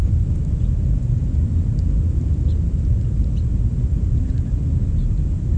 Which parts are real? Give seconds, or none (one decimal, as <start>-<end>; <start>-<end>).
3.3-5.6

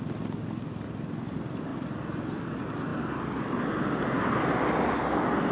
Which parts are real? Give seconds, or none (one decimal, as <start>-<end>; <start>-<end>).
0.0-5.5

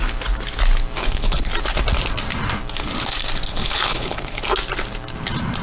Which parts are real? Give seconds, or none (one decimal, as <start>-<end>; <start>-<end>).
0.0-1.0; 1.5-3.5; 4.4-5.6

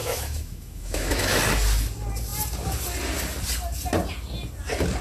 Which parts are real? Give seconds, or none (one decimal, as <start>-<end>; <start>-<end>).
1.4-5.0

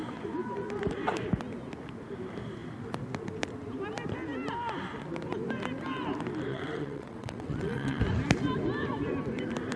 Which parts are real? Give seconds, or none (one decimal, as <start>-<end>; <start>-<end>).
0.0-6.5; 8.0-9.8